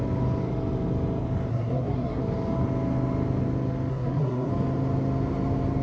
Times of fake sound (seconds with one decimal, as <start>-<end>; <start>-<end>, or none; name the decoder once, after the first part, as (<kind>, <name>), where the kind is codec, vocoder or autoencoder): 1.5-2.2 (codec, SNAC); 3.9-4.5